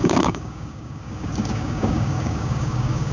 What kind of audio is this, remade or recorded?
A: remade